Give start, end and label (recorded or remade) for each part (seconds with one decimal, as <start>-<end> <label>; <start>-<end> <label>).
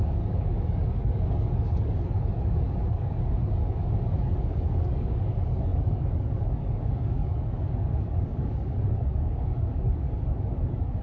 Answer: 0.0-11.0 remade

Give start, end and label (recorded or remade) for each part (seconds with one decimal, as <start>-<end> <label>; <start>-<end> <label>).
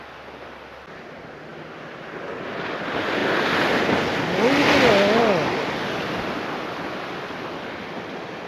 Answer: 0.0-8.5 recorded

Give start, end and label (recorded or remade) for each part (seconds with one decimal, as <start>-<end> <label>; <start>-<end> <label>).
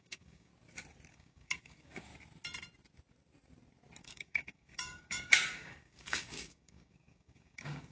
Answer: 0.0-0.5 remade; 0.5-1.1 recorded; 1.1-2.1 remade; 2.1-4.0 recorded; 4.0-7.9 remade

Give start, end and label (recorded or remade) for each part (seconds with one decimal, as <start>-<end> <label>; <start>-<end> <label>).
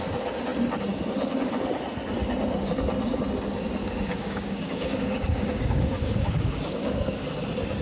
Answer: 0.0-3.8 recorded; 3.8-7.2 remade; 7.2-7.8 recorded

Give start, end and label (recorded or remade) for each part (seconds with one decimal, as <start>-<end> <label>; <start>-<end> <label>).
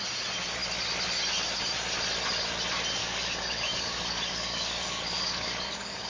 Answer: 0.0-3.0 recorded; 3.0-6.1 remade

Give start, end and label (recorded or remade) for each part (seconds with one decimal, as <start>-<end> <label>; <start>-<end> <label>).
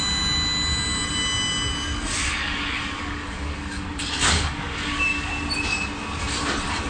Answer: 0.0-2.2 recorded; 2.2-5.3 remade; 5.3-6.9 recorded